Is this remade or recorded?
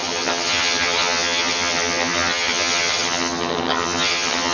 remade